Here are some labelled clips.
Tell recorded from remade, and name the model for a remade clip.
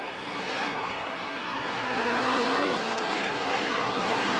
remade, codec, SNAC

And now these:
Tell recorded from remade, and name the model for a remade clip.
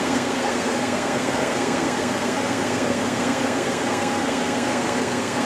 remade, codec, SNAC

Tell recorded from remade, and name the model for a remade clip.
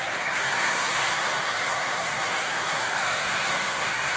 remade, codec, SNAC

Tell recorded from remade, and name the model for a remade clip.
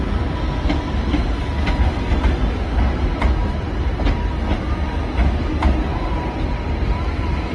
recorded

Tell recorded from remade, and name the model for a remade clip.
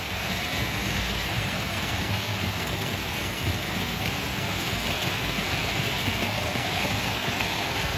remade, codec, SNAC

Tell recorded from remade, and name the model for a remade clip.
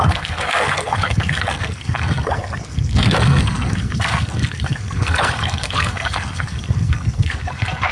remade, codec, SNAC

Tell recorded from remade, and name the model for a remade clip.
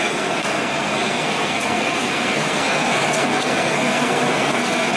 remade, codec, SNAC